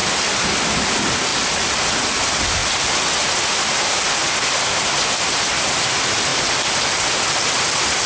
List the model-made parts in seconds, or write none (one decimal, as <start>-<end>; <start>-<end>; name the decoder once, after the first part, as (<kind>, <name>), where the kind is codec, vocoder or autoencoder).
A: 0.9-1.3 (vocoder, BigVGAN v2); 2.1-2.6; 5.2-6.3